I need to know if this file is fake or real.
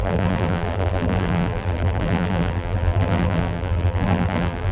fake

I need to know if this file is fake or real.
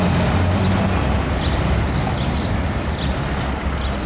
real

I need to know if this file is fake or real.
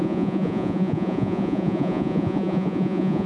fake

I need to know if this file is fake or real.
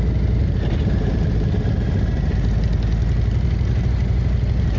real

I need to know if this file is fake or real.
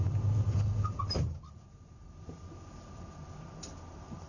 real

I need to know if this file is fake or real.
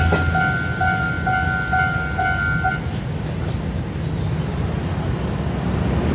real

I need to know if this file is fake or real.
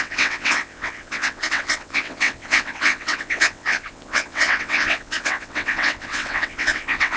fake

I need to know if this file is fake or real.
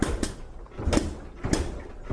real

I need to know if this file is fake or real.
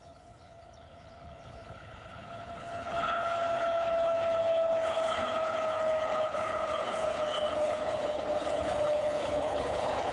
fake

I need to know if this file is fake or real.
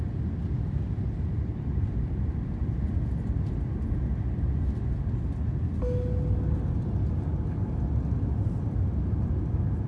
real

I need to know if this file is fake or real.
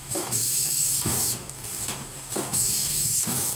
fake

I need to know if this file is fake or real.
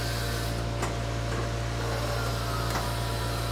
real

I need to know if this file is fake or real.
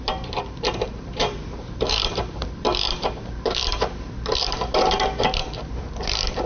fake